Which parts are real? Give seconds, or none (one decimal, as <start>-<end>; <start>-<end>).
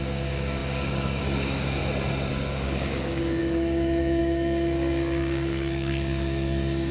1.8-2.3